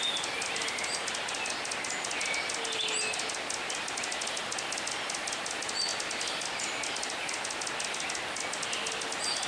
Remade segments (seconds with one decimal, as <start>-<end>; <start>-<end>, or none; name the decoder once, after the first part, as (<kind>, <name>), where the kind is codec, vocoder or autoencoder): none